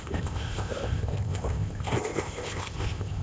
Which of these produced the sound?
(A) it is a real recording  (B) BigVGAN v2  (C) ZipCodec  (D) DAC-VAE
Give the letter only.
C